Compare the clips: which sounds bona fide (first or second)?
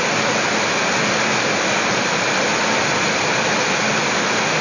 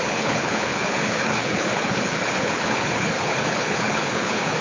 first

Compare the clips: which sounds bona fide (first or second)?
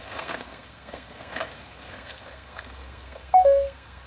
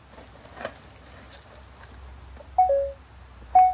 second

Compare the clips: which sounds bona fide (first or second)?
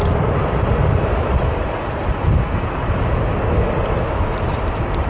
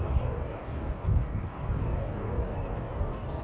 first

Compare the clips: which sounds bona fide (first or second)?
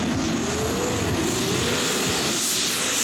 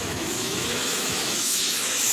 first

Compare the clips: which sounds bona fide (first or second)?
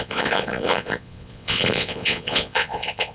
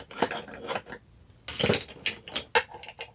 second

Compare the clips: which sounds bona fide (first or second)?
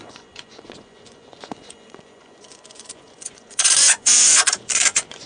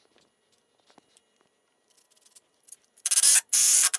second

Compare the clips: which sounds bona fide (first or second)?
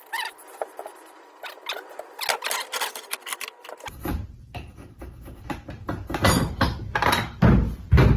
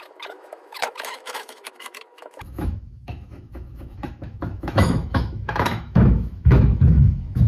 first